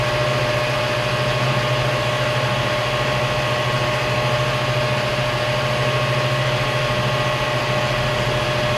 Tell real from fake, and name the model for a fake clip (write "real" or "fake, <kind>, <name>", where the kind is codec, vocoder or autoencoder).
real